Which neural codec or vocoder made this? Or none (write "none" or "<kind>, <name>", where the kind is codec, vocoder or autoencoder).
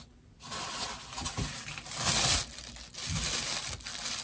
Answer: none